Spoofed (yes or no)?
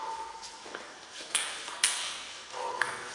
yes